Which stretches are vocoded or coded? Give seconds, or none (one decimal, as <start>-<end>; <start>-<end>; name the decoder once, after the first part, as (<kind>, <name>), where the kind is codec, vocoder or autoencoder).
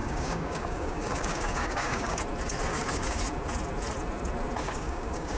0.0-2.2 (codec, DAC); 2.7-3.2; 4.6-5.4